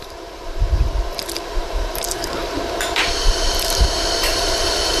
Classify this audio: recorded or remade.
remade